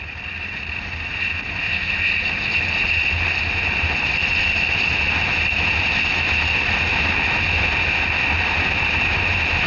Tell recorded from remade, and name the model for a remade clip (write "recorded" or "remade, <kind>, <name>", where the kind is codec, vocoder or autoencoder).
recorded